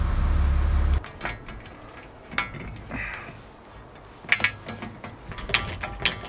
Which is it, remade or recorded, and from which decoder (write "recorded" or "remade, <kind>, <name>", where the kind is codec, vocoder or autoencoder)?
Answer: recorded